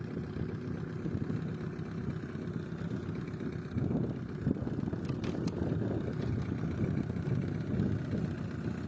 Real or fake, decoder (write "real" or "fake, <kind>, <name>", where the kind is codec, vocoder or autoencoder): real